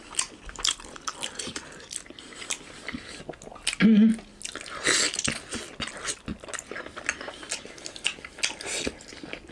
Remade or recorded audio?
recorded